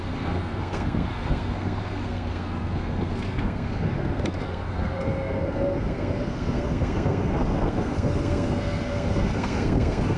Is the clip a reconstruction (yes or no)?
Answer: yes